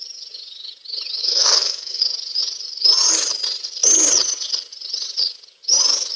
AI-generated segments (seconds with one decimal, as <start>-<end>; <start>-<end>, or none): 1.2-2.0